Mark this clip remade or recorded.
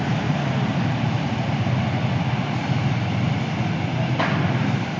recorded